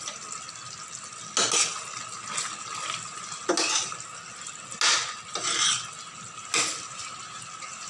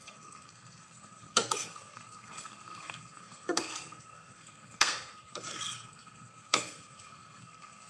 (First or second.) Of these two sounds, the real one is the first